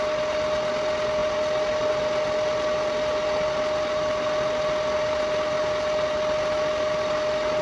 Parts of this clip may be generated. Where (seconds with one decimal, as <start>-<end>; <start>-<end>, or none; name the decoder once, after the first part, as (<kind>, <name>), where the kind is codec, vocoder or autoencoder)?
none